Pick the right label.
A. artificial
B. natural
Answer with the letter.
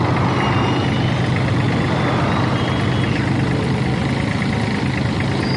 B